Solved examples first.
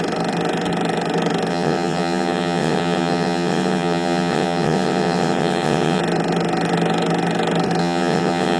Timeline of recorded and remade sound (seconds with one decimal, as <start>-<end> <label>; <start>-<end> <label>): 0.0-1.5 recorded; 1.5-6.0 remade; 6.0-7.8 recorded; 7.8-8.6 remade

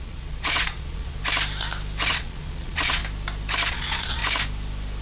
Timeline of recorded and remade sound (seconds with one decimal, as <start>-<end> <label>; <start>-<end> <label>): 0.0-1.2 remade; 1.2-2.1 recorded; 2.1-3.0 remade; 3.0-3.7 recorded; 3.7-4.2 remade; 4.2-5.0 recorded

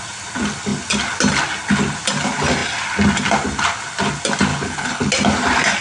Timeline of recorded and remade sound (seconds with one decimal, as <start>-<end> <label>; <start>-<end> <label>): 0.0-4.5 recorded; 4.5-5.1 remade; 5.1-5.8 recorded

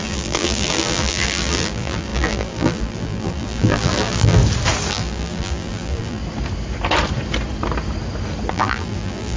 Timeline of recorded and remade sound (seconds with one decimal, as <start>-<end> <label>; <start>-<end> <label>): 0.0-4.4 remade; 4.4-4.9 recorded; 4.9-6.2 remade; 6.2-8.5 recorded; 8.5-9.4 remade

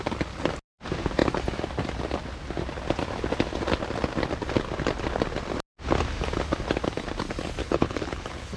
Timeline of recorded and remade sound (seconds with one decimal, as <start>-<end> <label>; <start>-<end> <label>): 0.0-7.6 recorded; 7.6-8.6 remade